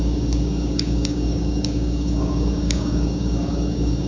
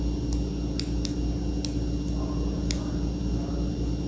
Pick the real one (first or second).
second